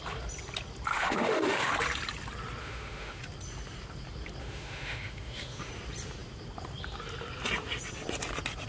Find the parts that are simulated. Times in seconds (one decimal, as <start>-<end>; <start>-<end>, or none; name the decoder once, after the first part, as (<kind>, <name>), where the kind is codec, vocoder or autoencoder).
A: 0.9-1.7 (autoencoder, DAC-VAE); 2.6-3.2; 4.4-5.7

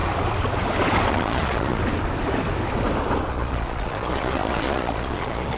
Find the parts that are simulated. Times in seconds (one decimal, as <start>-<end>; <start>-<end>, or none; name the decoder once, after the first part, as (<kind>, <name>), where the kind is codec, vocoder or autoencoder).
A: 1.1-1.8 (vocoder, Vocos); 3.3-5.6

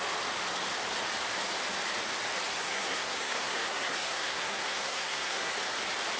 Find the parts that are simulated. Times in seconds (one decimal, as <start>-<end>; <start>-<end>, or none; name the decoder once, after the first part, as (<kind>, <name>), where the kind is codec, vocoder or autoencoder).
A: 2.5-5.5 (codec, SNAC)

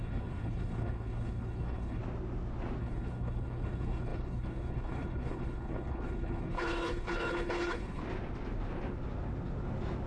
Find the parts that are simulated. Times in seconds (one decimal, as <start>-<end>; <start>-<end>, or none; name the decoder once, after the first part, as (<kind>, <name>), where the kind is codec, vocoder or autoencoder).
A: 0.0-2.0 (codec, HILCodec); 2.8-8.0

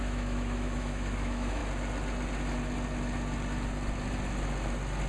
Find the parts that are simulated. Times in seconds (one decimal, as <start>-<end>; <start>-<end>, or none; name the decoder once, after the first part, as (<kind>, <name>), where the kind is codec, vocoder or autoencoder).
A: 0.0-1.6 (autoencoder, DAC-VAE)